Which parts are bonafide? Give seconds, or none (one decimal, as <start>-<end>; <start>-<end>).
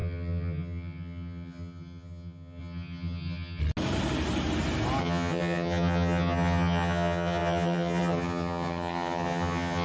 3.6-5.0